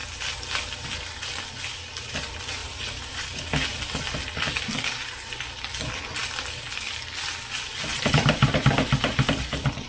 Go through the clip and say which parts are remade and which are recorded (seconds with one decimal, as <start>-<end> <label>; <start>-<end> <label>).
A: 0.0-2.6 recorded; 2.6-3.4 remade; 3.4-7.9 recorded; 7.9-9.9 remade